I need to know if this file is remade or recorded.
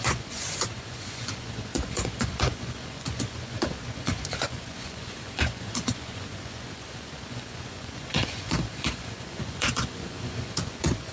remade